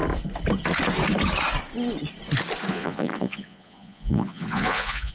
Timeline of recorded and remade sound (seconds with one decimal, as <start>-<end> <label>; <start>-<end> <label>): 0.0-2.7 recorded; 2.7-5.1 remade